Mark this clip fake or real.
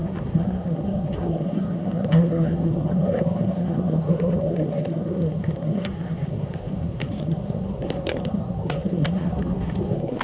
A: fake